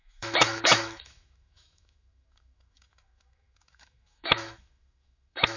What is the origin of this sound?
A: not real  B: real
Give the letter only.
A